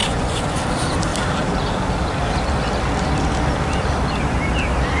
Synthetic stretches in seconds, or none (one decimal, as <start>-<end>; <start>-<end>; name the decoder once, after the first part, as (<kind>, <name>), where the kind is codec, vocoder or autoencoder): 0.0-0.6 (vocoder, Vocos)